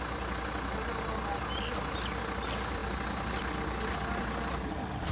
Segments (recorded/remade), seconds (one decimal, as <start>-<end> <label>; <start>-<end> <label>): 0.0-5.1 recorded